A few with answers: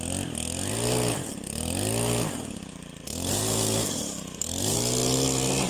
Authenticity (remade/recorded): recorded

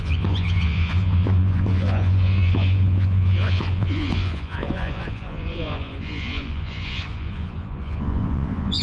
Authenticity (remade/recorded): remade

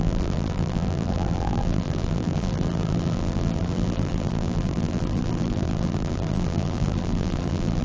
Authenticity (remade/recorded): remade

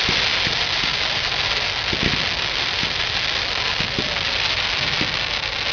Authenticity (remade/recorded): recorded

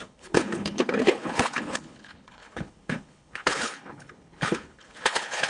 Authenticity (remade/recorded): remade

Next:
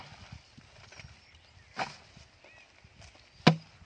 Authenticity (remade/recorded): recorded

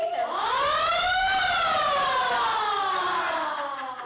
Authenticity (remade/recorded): recorded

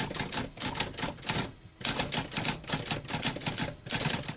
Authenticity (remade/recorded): recorded